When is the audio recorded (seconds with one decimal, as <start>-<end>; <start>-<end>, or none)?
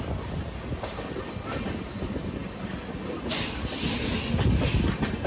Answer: 0.0-5.3